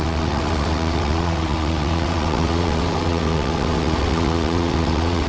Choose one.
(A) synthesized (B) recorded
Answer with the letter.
A